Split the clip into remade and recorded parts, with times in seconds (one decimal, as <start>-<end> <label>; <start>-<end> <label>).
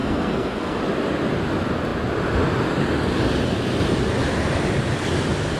0.0-0.8 remade; 0.8-5.6 recorded